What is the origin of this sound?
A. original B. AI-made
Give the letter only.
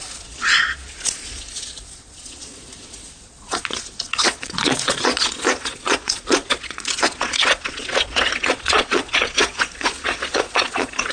B